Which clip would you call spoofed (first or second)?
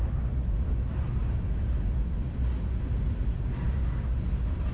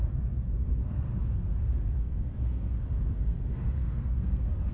second